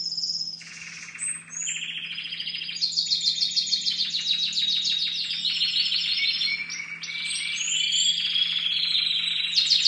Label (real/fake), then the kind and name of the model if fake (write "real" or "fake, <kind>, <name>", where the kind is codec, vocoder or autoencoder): real